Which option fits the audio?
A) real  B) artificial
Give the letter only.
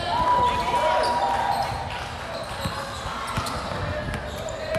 A